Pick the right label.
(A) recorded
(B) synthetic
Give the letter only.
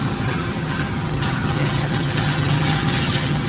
B